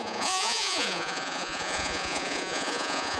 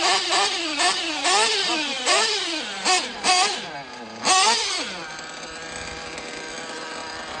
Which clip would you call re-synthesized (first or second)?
first